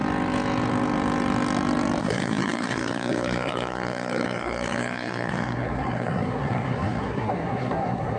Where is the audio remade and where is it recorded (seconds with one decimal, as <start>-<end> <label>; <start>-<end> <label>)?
0.0-2.0 recorded; 2.0-8.2 remade